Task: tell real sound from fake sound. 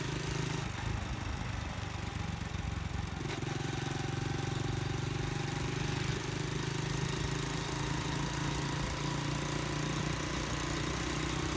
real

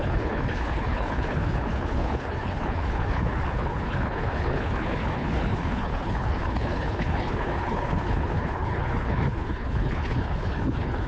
fake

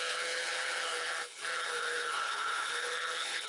fake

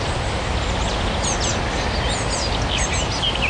real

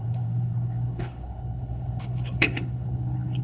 fake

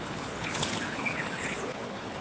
fake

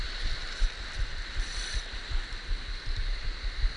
real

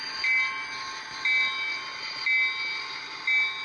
real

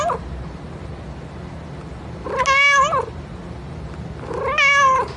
real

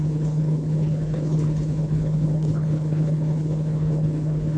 fake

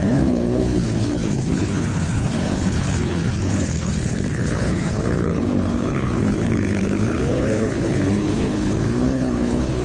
fake